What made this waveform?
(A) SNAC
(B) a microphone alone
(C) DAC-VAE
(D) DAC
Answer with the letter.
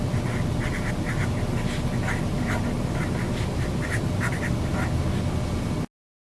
B